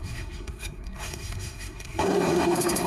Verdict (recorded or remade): remade